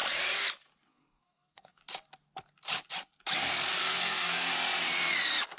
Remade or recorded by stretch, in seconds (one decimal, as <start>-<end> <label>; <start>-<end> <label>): 0.0-0.9 recorded; 0.9-1.8 remade; 1.8-3.8 recorded; 3.8-4.5 remade; 4.5-5.6 recorded